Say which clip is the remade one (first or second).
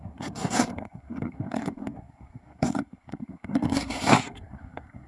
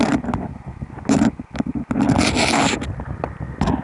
first